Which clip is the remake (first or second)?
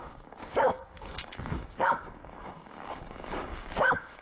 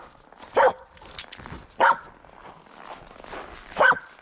first